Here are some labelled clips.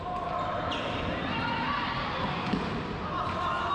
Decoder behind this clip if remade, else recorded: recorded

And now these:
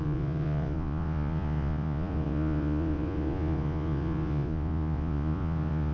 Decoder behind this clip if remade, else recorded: remade, vocoder, Vocos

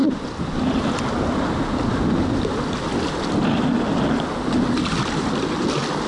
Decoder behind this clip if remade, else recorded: recorded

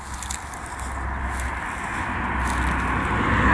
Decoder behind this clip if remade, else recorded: recorded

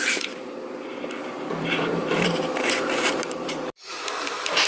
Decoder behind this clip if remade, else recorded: remade, vocoder, BigVGAN v2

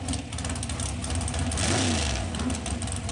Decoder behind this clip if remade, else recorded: recorded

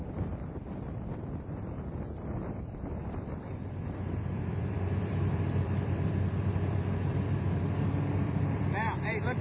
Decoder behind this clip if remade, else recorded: remade, vocoder, BigVGAN v2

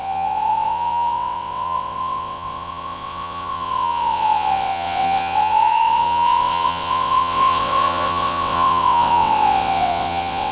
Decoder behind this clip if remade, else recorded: remade, vocoder, WaveNeXt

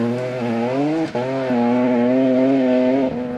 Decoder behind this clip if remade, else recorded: recorded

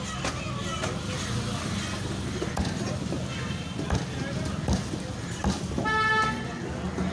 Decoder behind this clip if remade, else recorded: recorded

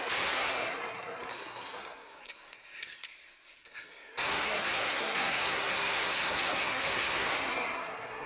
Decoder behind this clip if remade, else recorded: remade, codec, SNAC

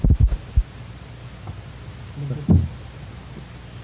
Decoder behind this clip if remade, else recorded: recorded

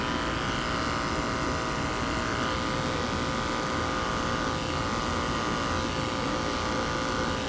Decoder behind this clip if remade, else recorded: recorded